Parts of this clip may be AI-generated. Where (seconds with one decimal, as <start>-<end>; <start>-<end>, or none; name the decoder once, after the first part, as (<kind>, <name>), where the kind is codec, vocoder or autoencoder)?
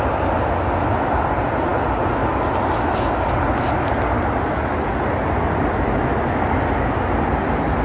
none